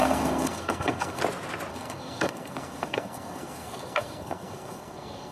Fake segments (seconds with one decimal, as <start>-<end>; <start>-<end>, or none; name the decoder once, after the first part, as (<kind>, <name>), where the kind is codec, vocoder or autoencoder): 0.0-1.2 (codec, SNAC); 1.7-5.3